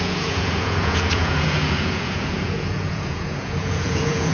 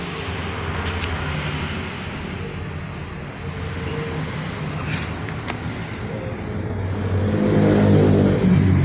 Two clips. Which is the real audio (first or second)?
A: second